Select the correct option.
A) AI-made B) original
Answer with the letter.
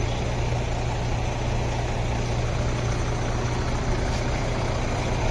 B